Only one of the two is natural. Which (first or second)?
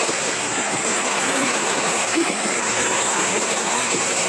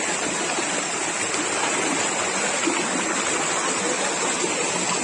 second